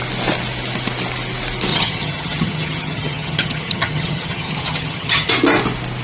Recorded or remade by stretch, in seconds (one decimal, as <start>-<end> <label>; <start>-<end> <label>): 0.0-1.7 recorded; 1.7-5.3 remade; 5.3-6.0 recorded